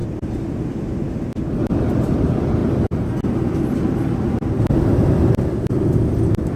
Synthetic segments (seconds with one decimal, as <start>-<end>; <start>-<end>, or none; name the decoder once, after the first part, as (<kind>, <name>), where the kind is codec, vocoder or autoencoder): none